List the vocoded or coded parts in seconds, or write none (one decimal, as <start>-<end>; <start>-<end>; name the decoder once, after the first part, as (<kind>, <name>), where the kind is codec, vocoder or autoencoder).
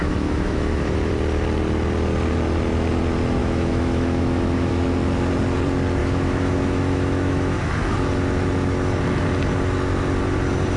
0.0-1.1 (autoencoder, DAC-VAE); 3.4-4.7; 6.0-7.7